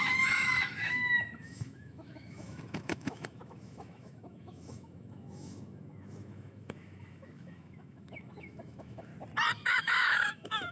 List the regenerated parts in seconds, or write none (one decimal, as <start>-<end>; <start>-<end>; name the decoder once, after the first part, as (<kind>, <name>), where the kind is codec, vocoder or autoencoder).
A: 0.0-9.1 (autoencoder, DAC-VAE); 9.7-10.7